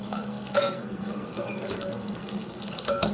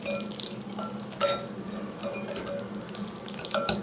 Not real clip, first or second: first